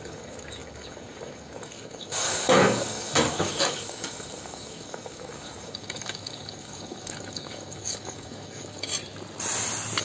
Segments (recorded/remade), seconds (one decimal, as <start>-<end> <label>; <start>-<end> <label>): 0.0-8.9 remade; 8.9-10.0 recorded